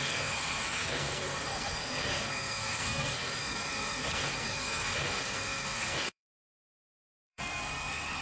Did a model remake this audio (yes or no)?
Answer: yes